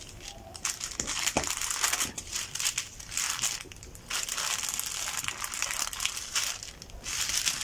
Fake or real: real